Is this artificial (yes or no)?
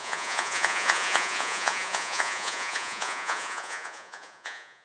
yes